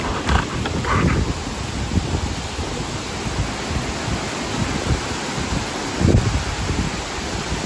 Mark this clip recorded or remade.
recorded